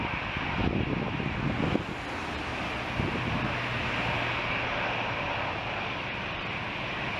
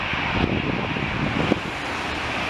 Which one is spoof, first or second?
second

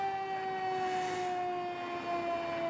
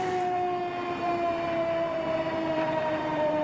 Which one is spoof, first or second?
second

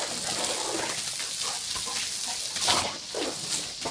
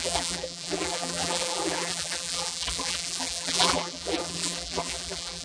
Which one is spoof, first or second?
second